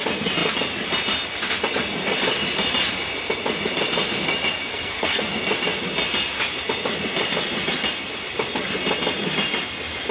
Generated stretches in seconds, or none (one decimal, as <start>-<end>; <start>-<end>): 4.7-5.3